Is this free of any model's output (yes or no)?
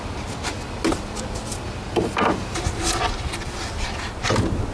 yes